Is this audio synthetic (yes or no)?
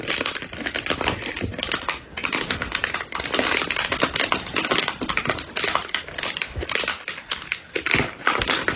no